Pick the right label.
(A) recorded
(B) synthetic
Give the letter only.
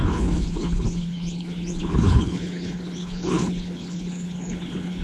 B